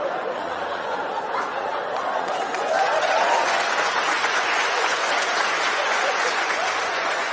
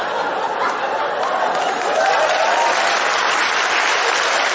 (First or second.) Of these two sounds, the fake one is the first